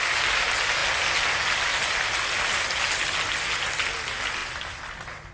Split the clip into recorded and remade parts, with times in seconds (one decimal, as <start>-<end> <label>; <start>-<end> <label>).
0.0-5.3 recorded